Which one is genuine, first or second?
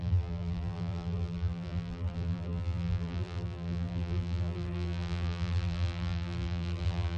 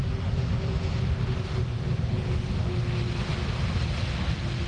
second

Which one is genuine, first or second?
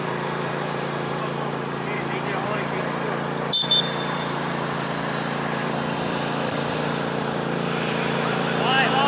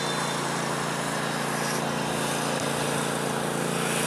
second